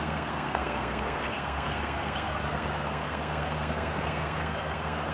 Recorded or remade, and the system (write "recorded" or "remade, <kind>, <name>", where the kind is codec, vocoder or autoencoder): remade, codec, SNAC